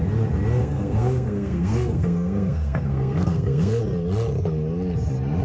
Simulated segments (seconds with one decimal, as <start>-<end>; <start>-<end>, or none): 0.6-3.8